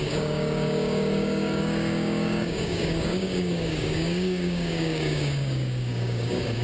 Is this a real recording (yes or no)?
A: no